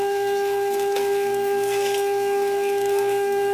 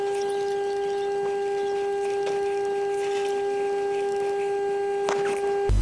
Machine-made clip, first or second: first